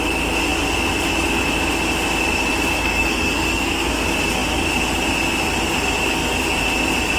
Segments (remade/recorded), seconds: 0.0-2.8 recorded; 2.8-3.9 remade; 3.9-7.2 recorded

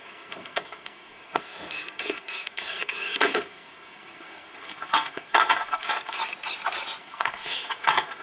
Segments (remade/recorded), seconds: 0.0-6.2 remade; 6.2-7.0 recorded; 7.0-8.2 remade

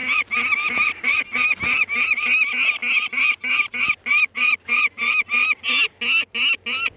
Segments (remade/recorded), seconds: 0.0-7.0 recorded

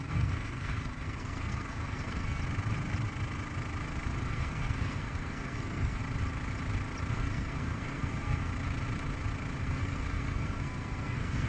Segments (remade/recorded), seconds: 0.0-2.4 remade; 2.4-4.3 recorded; 4.3-6.0 remade; 6.0-7.1 recorded; 7.1-8.5 remade; 8.5-9.6 recorded; 9.6-11.5 remade

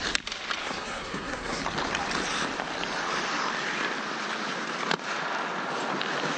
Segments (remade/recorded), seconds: 0.0-0.6 recorded; 0.6-1.6 remade; 1.6-6.4 recorded

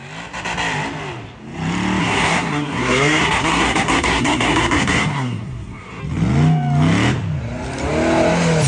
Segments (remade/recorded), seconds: 0.0-2.0 recorded; 2.0-6.0 remade; 6.0-8.7 recorded

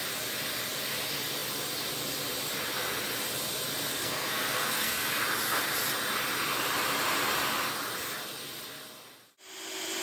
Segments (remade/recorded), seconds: 0.0-3.9 recorded; 3.9-5.2 remade; 5.2-10.0 recorded

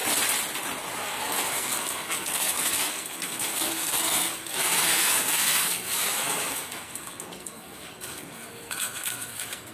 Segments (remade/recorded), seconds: 0.0-1.0 recorded; 1.0-9.7 remade